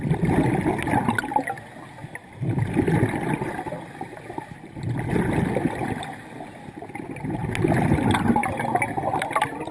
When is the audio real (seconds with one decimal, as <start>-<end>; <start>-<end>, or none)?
0.0-9.7